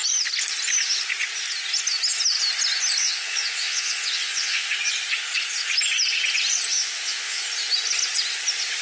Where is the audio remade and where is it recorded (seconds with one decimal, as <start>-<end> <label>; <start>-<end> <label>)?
0.0-3.0 recorded; 3.0-4.7 remade; 4.7-6.7 recorded; 6.7-7.4 remade; 7.4-8.8 recorded